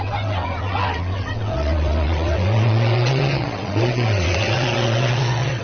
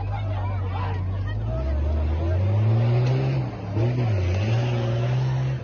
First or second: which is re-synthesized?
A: first